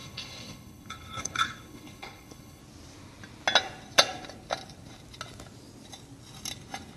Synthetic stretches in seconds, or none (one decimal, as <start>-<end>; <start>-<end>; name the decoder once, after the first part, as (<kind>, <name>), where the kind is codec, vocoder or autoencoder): 0.0-2.6 (codec, HILCodec)